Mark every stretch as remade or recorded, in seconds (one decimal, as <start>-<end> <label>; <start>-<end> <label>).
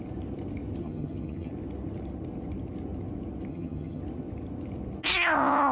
0.0-0.8 recorded; 0.8-1.5 remade; 1.5-3.5 recorded; 3.5-4.0 remade; 4.0-5.7 recorded